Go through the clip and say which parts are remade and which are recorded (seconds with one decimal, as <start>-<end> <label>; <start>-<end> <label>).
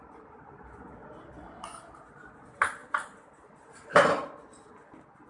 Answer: 0.0-5.3 recorded